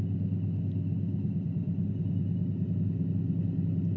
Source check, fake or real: real